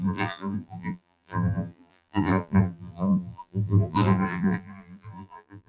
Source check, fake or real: fake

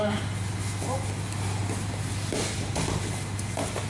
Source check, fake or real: real